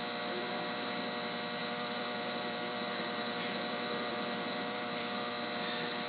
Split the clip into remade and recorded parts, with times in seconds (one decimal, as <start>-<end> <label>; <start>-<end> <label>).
0.0-1.6 recorded; 1.6-5.3 remade; 5.3-6.1 recorded